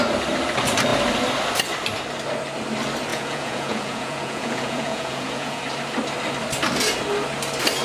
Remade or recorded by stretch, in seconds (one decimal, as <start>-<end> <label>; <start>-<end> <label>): 0.0-3.1 recorded; 3.1-5.6 remade; 5.6-7.8 recorded